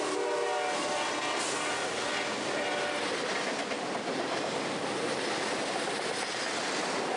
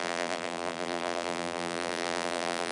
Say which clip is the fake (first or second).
second